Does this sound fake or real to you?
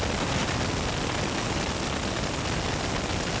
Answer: real